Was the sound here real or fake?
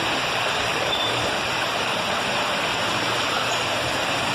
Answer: fake